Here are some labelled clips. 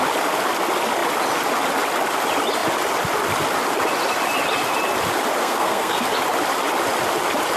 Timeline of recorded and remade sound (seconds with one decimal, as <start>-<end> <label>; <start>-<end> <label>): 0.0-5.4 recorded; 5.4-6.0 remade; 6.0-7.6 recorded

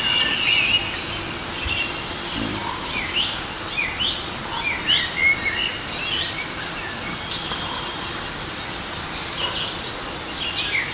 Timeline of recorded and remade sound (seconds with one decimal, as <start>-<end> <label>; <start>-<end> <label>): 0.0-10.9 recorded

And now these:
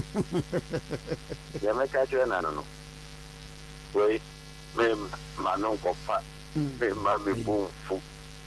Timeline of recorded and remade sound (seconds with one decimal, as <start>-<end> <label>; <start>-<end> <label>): 0.0-1.5 remade; 1.5-2.4 recorded; 2.4-4.3 remade; 4.3-5.1 recorded; 5.1-6.8 remade; 6.8-7.7 recorded; 7.7-8.5 remade

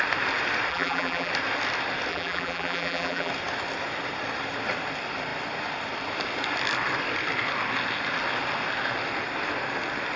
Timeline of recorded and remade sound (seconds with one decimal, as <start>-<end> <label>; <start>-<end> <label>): 0.0-0.7 recorded; 0.7-1.3 remade; 1.3-2.1 recorded; 2.1-3.3 remade; 3.3-10.2 recorded